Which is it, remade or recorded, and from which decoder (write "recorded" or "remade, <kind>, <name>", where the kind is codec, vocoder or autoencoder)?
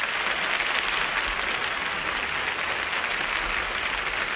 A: recorded